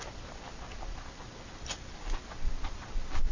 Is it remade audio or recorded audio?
recorded